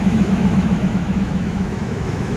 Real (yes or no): no